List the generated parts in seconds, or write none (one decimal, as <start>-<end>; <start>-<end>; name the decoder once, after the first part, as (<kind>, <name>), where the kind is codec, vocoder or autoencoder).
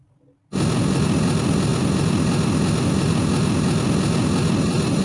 none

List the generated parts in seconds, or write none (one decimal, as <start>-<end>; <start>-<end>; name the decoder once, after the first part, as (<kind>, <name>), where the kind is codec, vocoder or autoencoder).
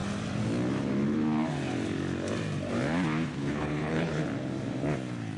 3.4-4.2 (codec, HILCodec)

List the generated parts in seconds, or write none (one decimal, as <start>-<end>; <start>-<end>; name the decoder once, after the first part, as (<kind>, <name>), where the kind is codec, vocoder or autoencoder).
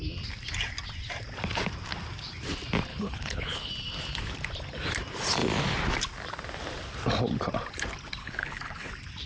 2.9-3.7 (codec, HILCodec); 8.2-8.9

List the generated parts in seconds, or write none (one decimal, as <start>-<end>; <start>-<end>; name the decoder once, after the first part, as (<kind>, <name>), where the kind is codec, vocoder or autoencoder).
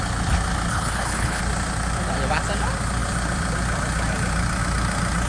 0.7-1.4 (codec, HILCodec)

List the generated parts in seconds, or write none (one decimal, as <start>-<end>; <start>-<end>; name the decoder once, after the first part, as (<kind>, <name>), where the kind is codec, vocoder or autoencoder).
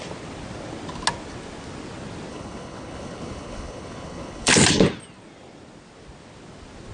2.3-4.5 (codec, HILCodec)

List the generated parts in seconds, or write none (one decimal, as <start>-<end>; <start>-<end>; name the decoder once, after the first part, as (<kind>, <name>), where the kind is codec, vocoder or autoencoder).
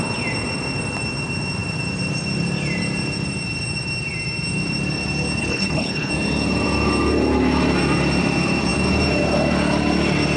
5.4-6.1 (codec, HILCodec)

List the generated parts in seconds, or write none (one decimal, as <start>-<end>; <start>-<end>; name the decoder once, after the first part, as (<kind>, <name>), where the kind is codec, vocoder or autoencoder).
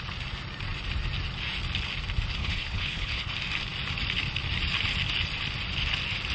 2.4-3.3 (codec, HILCodec)